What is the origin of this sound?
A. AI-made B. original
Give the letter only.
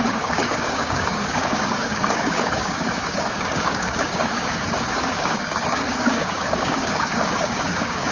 A